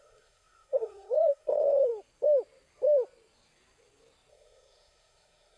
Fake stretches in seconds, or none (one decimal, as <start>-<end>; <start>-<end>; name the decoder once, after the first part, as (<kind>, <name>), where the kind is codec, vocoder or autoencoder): 0.0-1.9 (codec, SNAC); 4.3-5.6